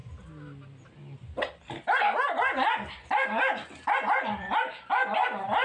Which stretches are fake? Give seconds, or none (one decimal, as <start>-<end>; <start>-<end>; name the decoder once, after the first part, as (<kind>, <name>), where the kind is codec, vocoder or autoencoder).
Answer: none